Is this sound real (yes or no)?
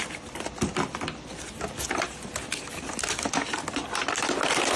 yes